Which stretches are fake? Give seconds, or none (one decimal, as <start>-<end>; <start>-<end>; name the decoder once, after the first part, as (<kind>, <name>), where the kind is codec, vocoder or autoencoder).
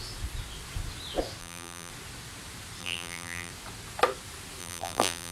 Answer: 1.4-1.9 (vocoder, BigVGAN v2); 2.8-3.5; 4.6-5.3